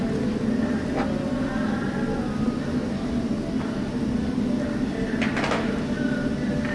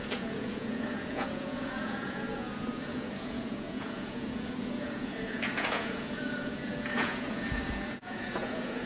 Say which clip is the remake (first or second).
second